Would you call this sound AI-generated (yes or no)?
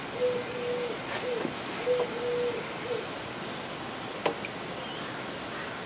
no